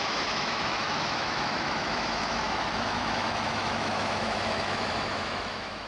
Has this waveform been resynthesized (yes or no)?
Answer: yes